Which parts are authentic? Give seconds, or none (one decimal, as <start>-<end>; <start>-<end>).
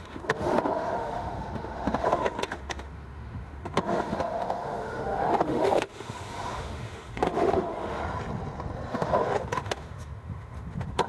8.0-8.9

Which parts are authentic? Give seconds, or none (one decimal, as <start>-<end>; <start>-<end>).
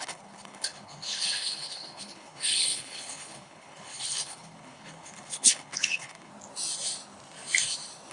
6.3-8.1